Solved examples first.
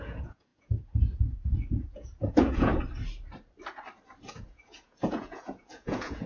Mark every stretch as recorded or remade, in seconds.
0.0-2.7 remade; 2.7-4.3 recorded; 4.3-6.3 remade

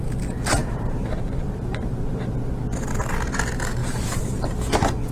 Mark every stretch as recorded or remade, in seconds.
0.0-0.6 recorded; 0.6-2.3 remade; 2.3-3.8 recorded; 3.8-4.5 remade; 4.5-5.1 recorded

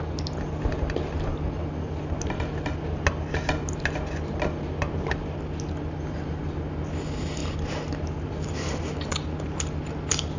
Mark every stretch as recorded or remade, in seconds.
0.0-10.4 recorded